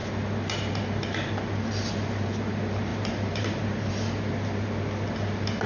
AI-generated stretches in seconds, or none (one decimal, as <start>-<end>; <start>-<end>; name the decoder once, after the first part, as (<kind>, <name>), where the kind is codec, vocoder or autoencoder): 2.9-3.9 (vocoder, BigVGAN v2)